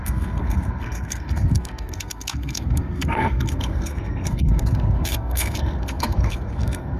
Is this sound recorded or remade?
remade